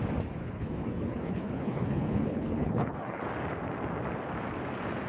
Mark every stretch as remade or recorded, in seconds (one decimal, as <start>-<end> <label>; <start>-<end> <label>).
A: 0.0-0.4 recorded; 0.4-3.2 remade; 3.2-5.1 recorded